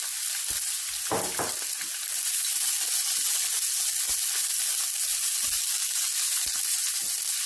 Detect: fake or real real